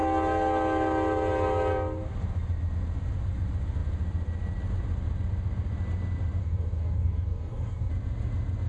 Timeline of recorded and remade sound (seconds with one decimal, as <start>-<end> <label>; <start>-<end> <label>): 0.0-6.4 recorded; 6.4-7.9 remade; 7.9-8.7 recorded